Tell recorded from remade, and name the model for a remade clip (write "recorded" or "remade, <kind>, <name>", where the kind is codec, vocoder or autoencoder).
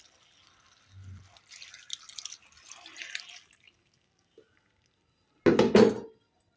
recorded